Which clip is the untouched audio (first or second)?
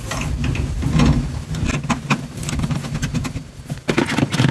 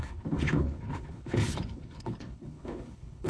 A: first